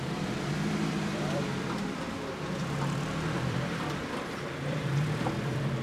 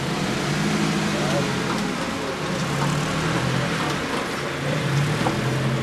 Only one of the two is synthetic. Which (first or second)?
first